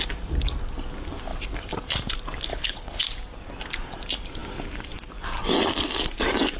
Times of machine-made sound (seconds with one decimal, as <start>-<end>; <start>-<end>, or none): 2.5-3.0